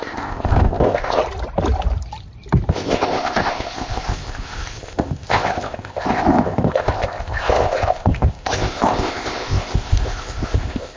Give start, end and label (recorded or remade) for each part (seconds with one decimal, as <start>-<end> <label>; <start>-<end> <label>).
0.0-1.2 remade; 1.2-2.7 recorded; 2.7-11.0 remade